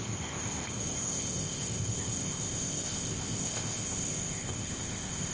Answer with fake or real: fake